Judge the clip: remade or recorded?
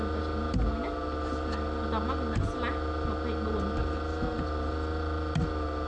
recorded